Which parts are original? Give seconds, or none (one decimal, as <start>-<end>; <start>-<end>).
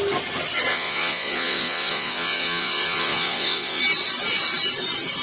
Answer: 0.0-0.7; 3.8-5.2